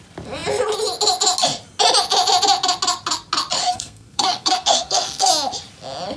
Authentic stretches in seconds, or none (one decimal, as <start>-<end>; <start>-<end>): 0.0-3.6; 5.3-6.2